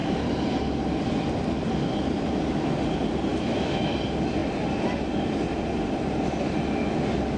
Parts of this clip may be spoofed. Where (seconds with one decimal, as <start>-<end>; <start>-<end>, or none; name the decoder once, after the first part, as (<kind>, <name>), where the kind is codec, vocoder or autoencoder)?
3.3-3.9 (autoencoder, DAC-VAE)